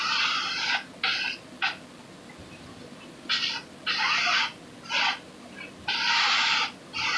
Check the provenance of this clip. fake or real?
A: real